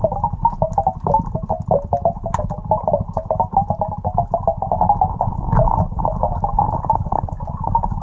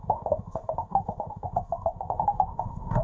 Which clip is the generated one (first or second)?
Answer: second